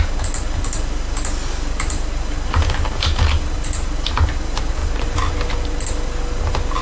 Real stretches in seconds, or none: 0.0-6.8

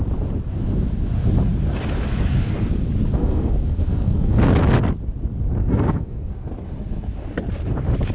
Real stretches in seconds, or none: 0.0-3.2; 4.4-5.6; 6.3-8.1

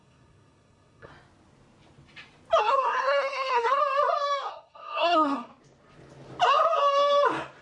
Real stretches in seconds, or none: 1.1-2.6; 3.8-4.5; 5.5-7.6

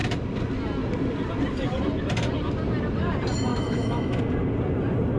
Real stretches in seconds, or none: 0.0-3.5; 4.2-5.2